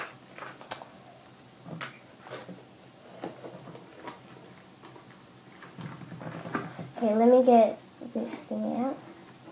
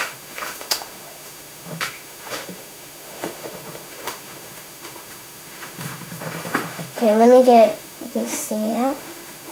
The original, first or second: first